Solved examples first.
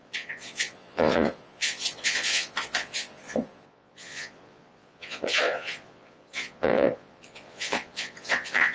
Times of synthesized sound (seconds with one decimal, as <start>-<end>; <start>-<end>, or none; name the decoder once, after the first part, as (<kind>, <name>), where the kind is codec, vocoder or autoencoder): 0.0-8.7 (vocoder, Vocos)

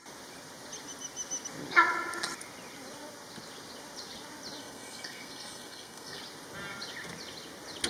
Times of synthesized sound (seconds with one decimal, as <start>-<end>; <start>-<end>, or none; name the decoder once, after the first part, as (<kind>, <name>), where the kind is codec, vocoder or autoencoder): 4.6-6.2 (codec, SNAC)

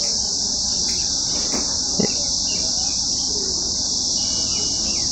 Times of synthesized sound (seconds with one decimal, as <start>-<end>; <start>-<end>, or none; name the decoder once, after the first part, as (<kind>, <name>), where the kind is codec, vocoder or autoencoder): none